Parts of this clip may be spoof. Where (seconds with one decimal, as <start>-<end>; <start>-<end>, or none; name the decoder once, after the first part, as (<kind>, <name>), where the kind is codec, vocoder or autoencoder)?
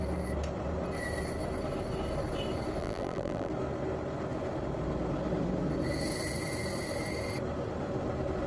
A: 2.8-3.5 (vocoder, BigVGAN v2)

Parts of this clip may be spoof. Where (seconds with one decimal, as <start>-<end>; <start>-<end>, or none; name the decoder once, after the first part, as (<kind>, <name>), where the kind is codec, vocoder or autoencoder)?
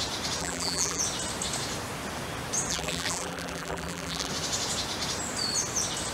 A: 0.4-1.0 (vocoder, BigVGAN v2); 2.7-4.3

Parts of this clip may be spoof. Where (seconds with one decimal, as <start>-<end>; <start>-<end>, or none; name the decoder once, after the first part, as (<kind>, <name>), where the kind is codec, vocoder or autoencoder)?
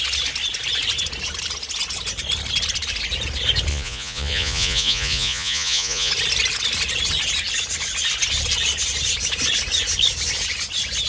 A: 3.7-6.1 (vocoder, Vocos)